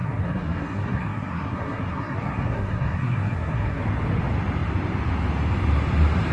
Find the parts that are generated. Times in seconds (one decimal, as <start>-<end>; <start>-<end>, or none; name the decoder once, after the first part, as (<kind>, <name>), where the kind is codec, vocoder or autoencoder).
0.0-3.8 (codec, SNAC)